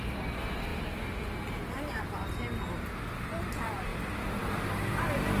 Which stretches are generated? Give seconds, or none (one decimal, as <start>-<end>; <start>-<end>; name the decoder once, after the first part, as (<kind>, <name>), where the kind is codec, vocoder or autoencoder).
none